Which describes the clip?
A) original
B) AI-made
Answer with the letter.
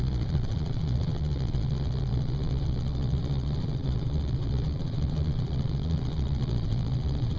B